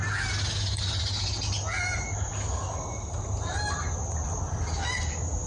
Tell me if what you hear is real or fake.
real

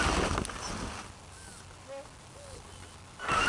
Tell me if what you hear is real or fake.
real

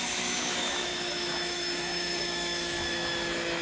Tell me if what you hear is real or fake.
fake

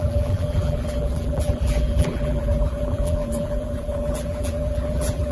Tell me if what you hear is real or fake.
fake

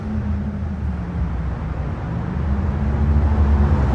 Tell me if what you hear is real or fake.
real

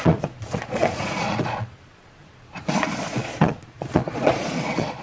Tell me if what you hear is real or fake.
fake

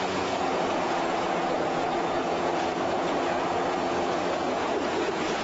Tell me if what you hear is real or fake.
fake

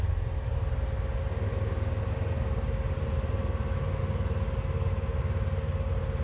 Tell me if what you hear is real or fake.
real